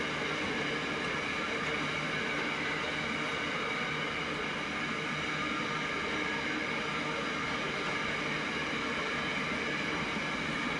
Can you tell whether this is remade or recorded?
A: recorded